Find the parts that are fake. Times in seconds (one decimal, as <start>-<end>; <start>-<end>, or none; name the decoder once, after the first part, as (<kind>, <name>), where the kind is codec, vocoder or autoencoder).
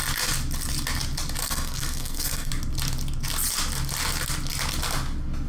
1.4-2.5 (codec, SNAC)